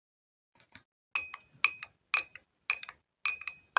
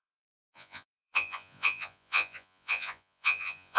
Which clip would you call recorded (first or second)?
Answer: first